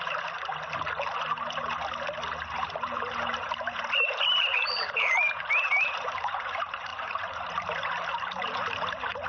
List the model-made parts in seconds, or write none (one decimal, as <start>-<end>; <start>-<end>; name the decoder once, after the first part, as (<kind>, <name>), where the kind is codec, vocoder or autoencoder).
0.0-0.5 (vocoder, BigVGAN v2); 2.5-9.3